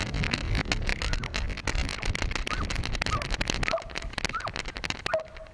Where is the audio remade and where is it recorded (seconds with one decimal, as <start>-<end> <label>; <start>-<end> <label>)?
0.0-5.5 recorded